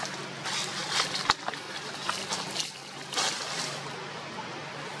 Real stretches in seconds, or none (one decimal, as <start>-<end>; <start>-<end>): 0.0-5.0